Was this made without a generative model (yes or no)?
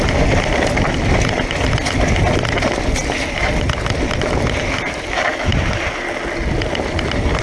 yes